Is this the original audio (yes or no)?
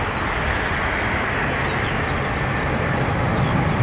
yes